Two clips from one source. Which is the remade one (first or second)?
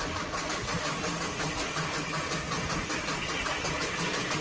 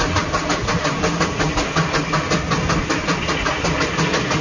first